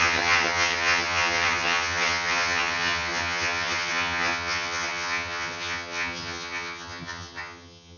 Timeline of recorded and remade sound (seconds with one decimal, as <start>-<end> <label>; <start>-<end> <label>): 0.0-8.0 remade